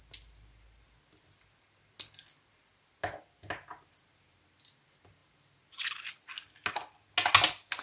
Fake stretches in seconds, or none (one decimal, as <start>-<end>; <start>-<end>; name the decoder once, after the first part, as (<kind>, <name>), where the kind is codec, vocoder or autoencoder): none